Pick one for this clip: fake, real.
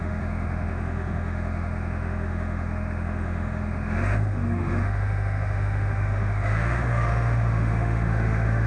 fake